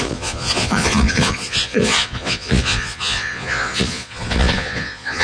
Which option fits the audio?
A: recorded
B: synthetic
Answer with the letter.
B